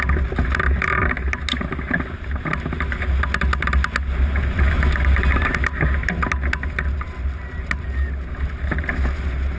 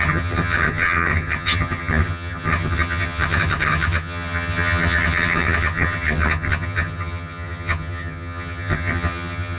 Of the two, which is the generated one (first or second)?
second